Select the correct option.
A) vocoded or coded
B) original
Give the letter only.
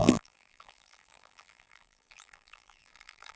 A